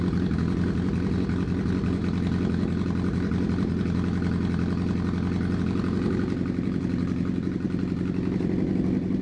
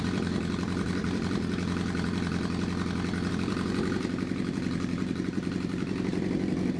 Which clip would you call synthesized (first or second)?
second